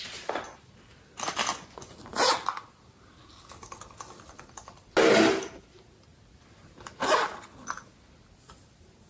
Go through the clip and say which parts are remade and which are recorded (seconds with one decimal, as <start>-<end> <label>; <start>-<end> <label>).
0.0-1.5 recorded; 1.5-2.2 remade; 2.2-9.1 recorded